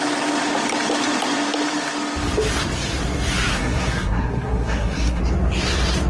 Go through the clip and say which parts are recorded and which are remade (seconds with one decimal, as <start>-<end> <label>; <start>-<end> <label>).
0.0-3.5 recorded; 3.5-5.2 remade; 5.2-6.1 recorded